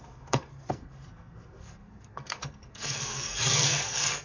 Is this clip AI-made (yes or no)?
yes